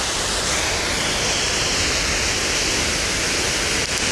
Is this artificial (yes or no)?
no